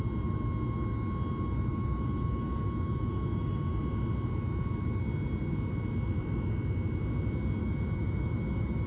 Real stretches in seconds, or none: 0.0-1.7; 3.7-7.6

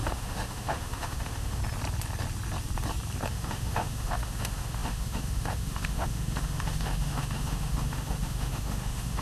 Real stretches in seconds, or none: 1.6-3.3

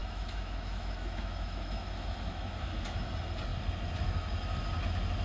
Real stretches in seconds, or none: 3.1-5.2

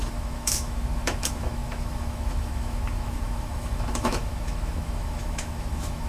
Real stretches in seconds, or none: none

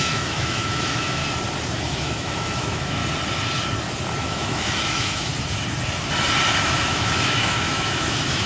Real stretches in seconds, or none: 1.2-1.8; 3.0-4.2; 5.3-6.6

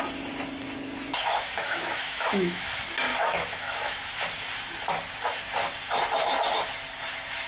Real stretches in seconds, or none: 0.0-1.1; 2.7-3.1; 4.2-7.5